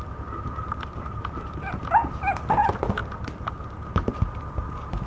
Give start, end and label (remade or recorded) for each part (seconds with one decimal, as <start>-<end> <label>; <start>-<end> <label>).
0.0-5.1 recorded